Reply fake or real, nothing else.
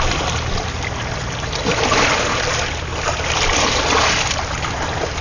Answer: real